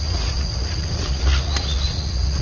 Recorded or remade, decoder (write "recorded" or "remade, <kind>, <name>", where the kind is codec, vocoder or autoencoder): remade, vocoder, Vocos